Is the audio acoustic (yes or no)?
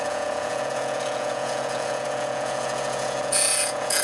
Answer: no